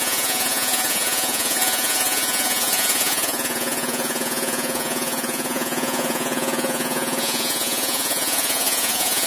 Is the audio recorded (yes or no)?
no